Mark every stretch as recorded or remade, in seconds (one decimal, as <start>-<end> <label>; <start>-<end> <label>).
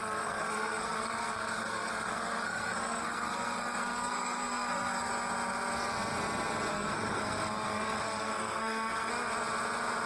0.0-5.1 remade; 5.1-6.7 recorded; 6.7-9.1 remade; 9.1-10.1 recorded